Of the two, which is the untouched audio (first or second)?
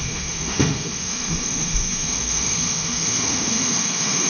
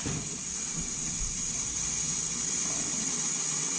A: second